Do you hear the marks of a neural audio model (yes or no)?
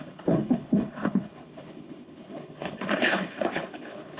yes